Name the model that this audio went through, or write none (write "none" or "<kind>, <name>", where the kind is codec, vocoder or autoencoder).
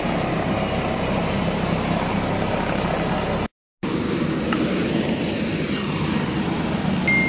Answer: none